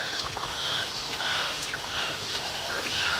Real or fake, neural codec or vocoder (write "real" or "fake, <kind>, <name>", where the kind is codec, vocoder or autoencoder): fake, autoencoder, DAC-VAE